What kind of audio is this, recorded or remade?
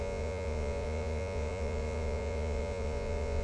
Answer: remade